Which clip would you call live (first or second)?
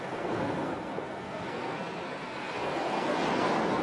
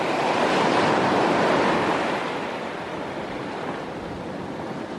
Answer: second